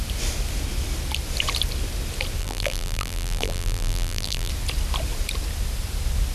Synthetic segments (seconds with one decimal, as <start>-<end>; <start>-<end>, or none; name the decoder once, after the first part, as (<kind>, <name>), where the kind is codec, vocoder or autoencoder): 2.4-4.5 (vocoder, BigVGAN v2)